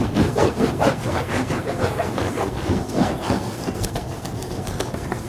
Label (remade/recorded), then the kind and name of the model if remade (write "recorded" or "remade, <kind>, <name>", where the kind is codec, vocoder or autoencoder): remade, codec, SNAC